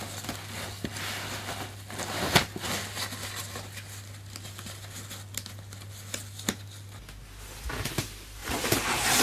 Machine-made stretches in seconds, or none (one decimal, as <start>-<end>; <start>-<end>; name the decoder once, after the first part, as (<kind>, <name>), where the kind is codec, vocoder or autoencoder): 8.4-9.2 (vocoder, BigVGAN v2)